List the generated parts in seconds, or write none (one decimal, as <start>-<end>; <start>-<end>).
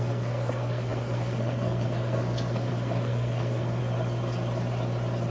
0.0-3.8